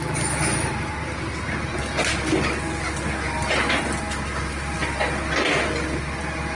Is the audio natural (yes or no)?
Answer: yes